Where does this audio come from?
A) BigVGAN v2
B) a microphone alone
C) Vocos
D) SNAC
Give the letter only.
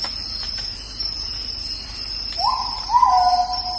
A